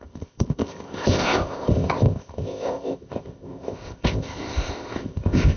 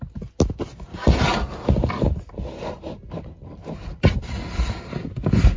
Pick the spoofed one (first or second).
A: first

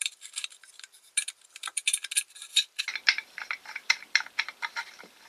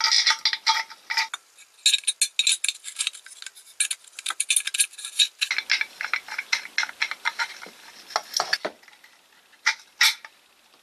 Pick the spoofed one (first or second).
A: first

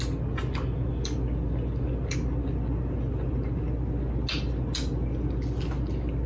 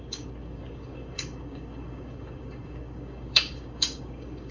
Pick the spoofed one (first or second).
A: second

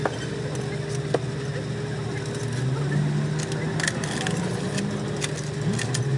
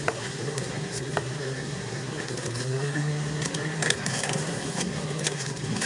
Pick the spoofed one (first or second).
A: second